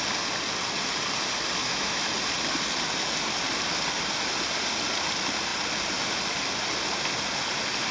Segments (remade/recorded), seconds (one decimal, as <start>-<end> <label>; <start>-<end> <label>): 0.0-1.6 recorded; 1.6-2.1 remade; 2.1-7.9 recorded